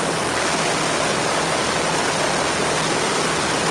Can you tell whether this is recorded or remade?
recorded